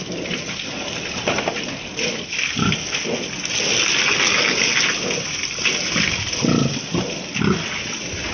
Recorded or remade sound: recorded